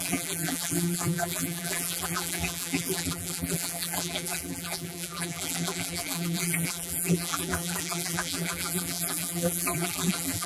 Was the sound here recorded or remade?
remade